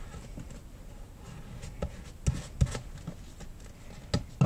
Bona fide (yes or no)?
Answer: yes